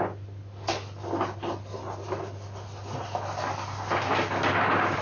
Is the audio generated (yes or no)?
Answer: no